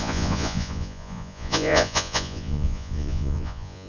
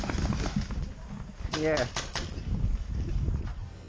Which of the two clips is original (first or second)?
second